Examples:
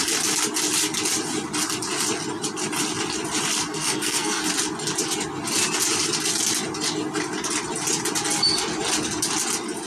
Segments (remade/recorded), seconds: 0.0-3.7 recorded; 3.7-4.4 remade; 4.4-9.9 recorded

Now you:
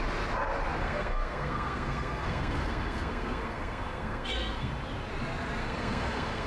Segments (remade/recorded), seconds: 0.0-0.8 recorded; 0.8-4.7 remade; 4.7-5.6 recorded; 5.6-6.5 remade

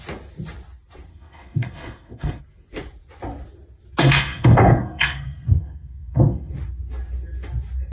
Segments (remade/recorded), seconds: 0.0-1.1 recorded; 1.1-2.4 remade; 2.4-4.0 recorded; 4.0-6.5 remade; 6.5-7.9 recorded

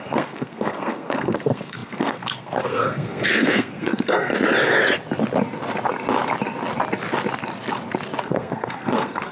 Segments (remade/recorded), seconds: 0.0-4.3 remade; 4.3-8.2 recorded; 8.2-9.3 remade

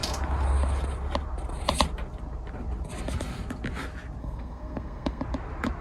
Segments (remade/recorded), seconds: 0.0-4.2 recorded; 4.2-5.2 remade; 5.2-5.8 recorded

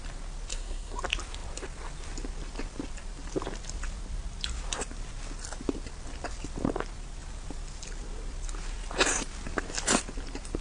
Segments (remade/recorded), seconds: 0.0-0.5 recorded; 0.5-1.0 remade; 1.0-10.6 recorded

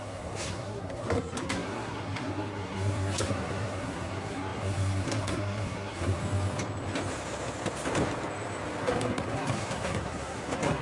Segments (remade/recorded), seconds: 0.0-6.2 remade; 6.2-8.8 recorded; 8.8-10.8 remade